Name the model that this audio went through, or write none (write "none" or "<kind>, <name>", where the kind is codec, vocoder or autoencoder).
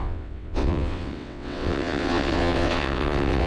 vocoder, WaveNeXt